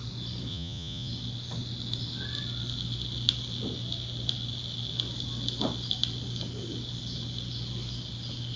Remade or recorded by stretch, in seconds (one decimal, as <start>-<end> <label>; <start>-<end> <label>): 0.0-0.5 recorded; 0.5-1.1 remade; 1.1-8.6 recorded